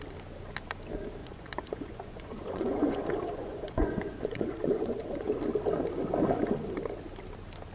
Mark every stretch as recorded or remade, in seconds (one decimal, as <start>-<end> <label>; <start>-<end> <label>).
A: 0.0-1.2 recorded; 1.2-5.4 remade; 5.4-7.7 recorded